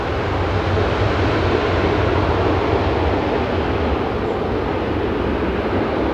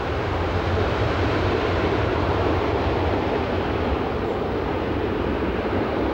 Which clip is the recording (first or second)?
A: first